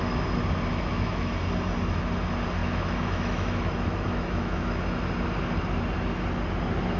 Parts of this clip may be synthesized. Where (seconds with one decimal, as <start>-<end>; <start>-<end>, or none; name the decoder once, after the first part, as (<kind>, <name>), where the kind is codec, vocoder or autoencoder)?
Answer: 0.7-1.3 (autoencoder, DAC-VAE); 2.6-5.0